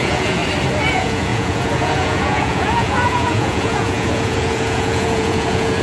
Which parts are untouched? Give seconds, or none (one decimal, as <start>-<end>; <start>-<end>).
0.4-0.9